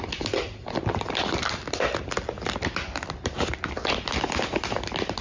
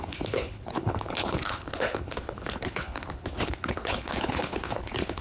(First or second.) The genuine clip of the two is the first